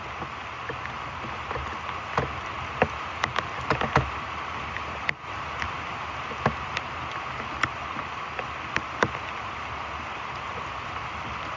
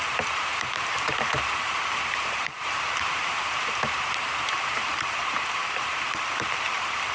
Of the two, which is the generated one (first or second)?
second